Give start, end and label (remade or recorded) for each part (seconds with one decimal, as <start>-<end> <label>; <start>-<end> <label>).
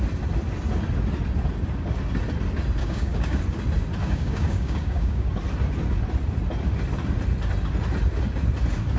0.0-2.8 recorded; 2.8-3.4 remade; 3.4-4.0 recorded; 4.0-5.3 remade; 5.3-9.0 recorded